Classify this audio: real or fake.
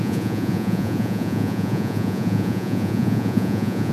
fake